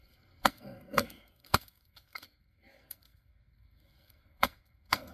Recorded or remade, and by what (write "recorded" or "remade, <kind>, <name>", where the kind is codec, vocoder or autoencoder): remade, codec, SNAC